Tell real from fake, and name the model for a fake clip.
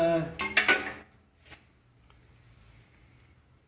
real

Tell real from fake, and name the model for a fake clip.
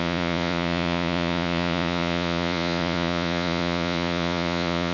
fake, vocoder, Vocos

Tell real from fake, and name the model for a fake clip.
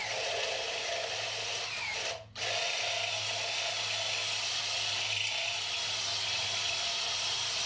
real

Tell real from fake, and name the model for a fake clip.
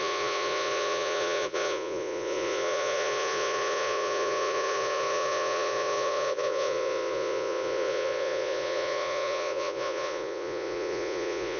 fake, vocoder, Vocos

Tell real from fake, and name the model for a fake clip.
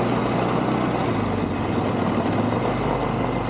real